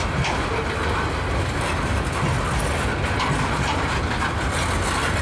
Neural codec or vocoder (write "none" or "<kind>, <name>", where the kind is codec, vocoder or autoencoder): none